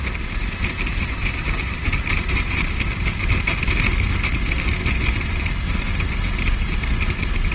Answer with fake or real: real